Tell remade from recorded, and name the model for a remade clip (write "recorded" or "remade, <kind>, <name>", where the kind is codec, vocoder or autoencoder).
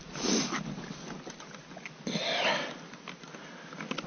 recorded